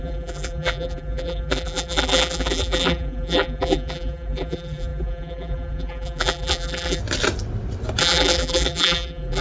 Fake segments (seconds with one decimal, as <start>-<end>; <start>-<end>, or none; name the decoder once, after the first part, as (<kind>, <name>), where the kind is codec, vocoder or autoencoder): 0.0-7.0 (vocoder, BigVGAN v2); 8.0-9.4

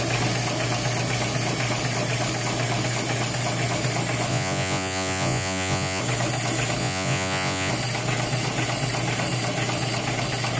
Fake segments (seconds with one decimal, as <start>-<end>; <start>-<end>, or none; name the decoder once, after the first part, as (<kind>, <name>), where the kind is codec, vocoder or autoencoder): 4.3-6.0 (vocoder, Vocos); 6.8-7.7

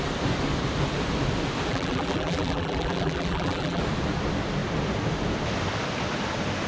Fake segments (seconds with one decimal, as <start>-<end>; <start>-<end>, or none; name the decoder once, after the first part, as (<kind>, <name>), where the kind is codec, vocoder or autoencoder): 1.7-3.8 (vocoder, BigVGAN v2)